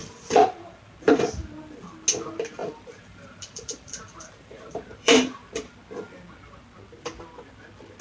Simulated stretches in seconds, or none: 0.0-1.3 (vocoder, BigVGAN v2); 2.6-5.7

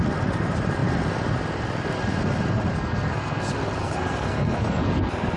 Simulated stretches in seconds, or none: 2.7-3.4 (codec, SNAC); 3.8-5.4

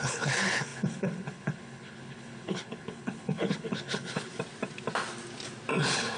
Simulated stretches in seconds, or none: 0.0-4.3 (codec, HILCodec); 5.8-6.2

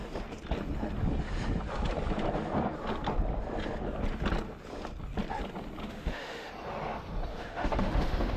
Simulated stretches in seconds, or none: 5.8-6.5 (autoencoder, DAC-VAE); 7.3-8.4

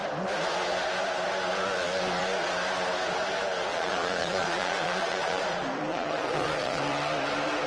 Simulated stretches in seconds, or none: 3.7-5.4 (vocoder, Vocos); 5.9-6.8

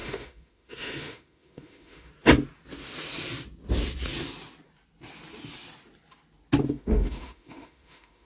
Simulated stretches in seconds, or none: 0.0-2.1 (autoencoder, DAC-VAE); 6.6-8.2

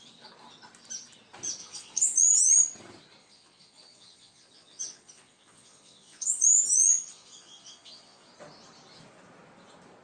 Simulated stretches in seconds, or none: 1.6-2.5 (vocoder, Vocos); 3.2-8.3